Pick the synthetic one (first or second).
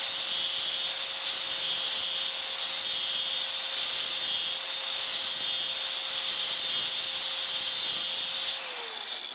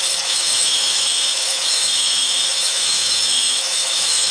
second